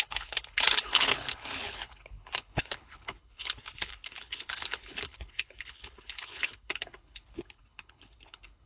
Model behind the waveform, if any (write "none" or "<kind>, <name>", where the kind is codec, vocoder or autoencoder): codec, HILCodec